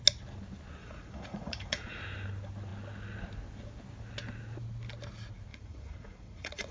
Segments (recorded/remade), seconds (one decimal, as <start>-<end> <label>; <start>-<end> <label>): 0.0-0.8 recorded; 0.8-2.0 remade; 2.0-5.5 recorded; 5.5-6.7 remade